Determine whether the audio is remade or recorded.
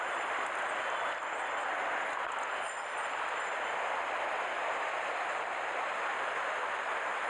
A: recorded